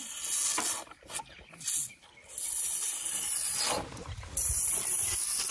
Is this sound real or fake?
real